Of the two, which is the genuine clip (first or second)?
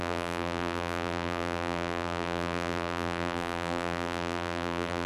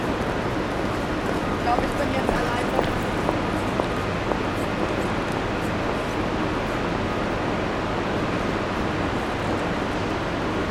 second